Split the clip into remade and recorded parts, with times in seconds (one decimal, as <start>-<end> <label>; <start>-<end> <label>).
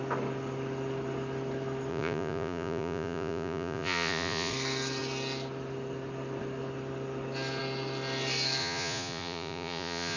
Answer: 0.0-1.9 recorded; 1.9-4.5 remade; 4.5-8.6 recorded; 8.6-10.2 remade